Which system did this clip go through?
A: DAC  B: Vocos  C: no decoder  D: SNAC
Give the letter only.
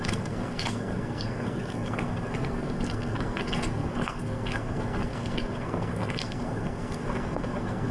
D